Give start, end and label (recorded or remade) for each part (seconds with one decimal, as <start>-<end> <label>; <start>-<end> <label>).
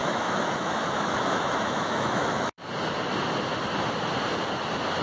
0.0-2.6 remade; 2.6-5.0 recorded